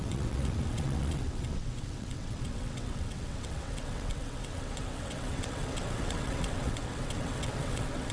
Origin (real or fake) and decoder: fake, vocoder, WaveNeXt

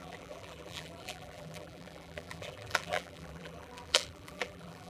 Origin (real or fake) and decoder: fake, vocoder, BigVGAN v2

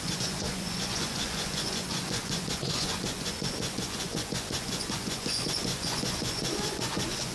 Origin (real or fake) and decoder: fake, vocoder, Vocos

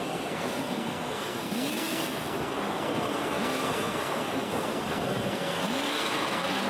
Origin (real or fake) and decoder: fake, codec, SNAC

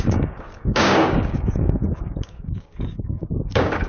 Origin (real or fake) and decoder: fake, codec, DAC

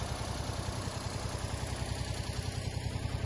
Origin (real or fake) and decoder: real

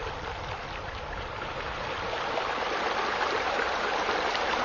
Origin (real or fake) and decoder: real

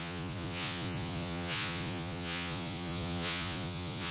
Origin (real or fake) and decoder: fake, vocoder, Vocos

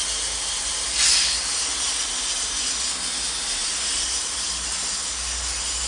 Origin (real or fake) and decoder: real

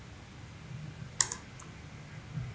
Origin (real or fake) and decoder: real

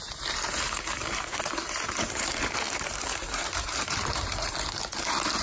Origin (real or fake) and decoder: fake, vocoder, BigVGAN v2